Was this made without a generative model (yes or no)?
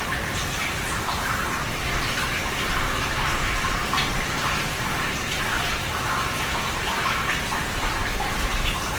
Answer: yes